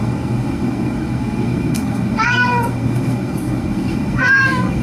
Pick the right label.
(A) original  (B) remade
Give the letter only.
B